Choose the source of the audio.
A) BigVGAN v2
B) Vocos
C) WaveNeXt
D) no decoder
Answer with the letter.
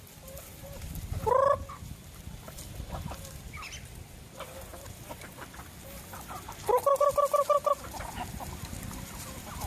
A